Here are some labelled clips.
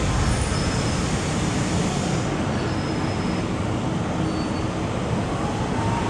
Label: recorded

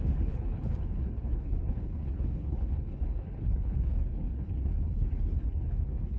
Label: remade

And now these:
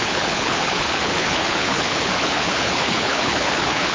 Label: remade